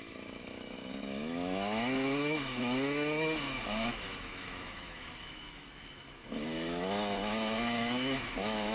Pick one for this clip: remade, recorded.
remade